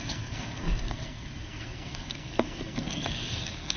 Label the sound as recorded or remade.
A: remade